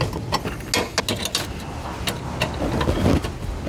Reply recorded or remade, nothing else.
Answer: recorded